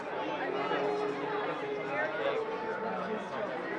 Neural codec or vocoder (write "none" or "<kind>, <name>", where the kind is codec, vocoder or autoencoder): none